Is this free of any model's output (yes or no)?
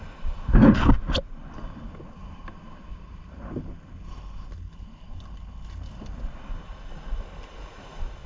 yes